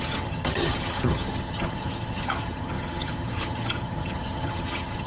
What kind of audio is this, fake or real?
fake